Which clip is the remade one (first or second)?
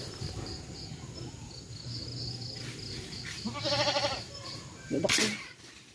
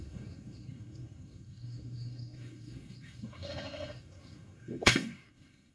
second